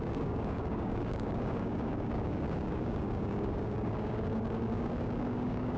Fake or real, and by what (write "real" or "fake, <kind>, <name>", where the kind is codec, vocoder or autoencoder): fake, codec, DAC